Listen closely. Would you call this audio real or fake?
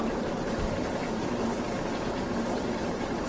fake